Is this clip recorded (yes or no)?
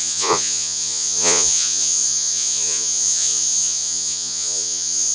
no